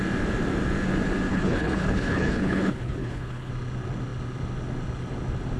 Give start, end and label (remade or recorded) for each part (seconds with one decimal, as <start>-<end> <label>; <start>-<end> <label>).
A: 0.0-1.3 recorded; 1.3-3.5 remade; 3.5-5.6 recorded